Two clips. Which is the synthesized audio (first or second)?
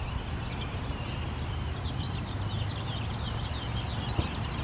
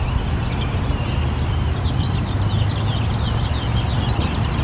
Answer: first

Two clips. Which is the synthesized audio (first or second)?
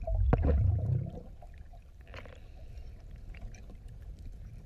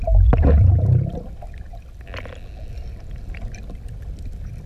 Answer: first